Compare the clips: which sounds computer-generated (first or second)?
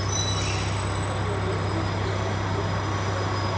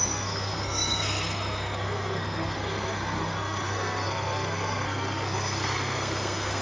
second